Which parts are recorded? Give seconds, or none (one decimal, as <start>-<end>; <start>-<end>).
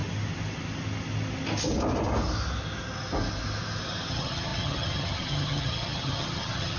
0.0-4.1